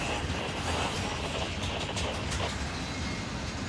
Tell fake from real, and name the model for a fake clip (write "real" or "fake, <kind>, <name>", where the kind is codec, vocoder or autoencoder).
real